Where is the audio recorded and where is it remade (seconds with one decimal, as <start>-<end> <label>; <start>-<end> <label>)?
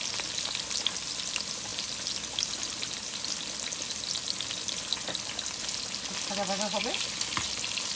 0.0-8.0 recorded